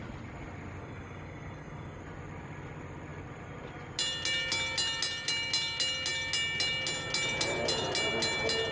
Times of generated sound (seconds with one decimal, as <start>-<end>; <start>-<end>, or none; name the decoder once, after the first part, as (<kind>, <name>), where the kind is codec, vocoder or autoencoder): 0.8-2.0 (codec, DAC)